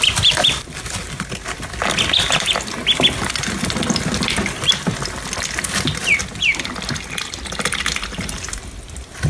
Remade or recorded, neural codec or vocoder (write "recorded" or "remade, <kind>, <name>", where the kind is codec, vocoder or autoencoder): recorded